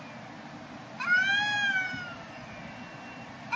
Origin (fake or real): real